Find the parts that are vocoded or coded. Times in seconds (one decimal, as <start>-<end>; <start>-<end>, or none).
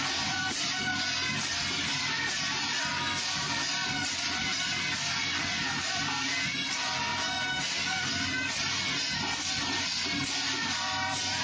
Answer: 0.0-0.9; 2.1-4.5; 5.2-7.1; 9.5-11.4